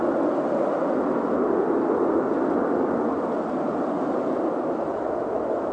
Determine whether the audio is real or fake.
real